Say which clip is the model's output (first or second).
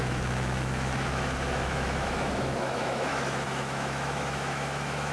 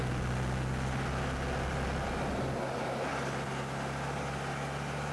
first